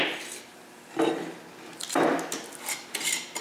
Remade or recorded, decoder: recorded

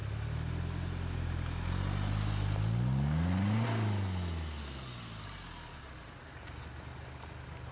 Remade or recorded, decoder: recorded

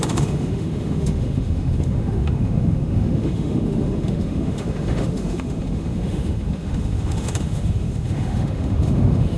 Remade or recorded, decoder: remade, autoencoder, DAC-VAE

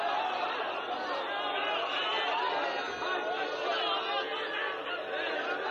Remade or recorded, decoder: recorded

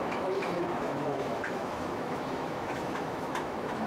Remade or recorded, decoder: remade, autoencoder, DAC-VAE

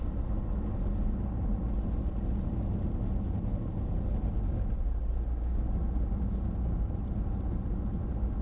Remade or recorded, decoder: recorded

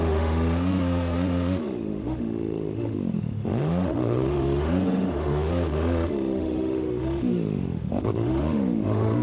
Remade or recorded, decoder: remade, autoencoder, DAC-VAE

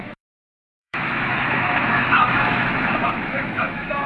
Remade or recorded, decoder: remade, autoencoder, DAC-VAE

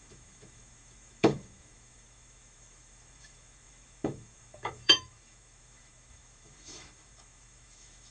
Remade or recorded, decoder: remade, autoencoder, DAC-VAE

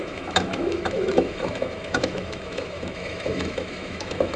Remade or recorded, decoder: remade, autoencoder, DAC-VAE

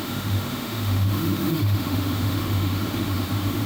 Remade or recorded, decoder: remade, autoencoder, DAC-VAE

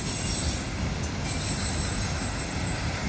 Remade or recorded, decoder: recorded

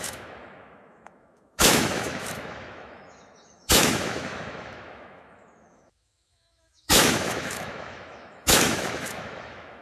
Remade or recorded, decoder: remade, autoencoder, DAC-VAE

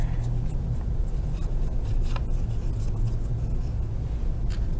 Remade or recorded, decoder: recorded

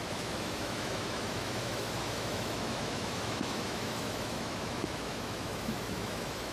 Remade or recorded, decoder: remade, autoencoder, DAC-VAE